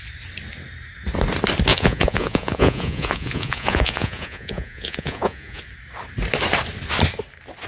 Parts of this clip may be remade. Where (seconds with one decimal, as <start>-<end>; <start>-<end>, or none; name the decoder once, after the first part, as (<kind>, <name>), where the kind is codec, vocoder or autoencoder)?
1.7-5.6 (vocoder, Vocos)